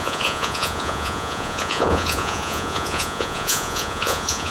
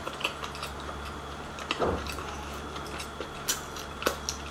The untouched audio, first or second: second